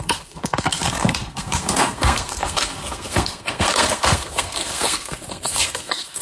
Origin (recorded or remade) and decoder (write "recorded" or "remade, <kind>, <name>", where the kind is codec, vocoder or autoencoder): remade, codec, SNAC